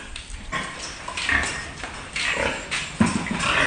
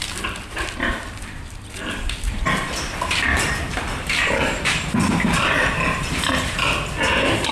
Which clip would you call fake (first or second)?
second